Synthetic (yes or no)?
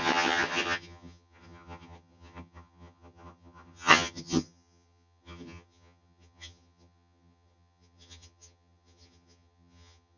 yes